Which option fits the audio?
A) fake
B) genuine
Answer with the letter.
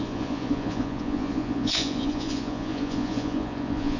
A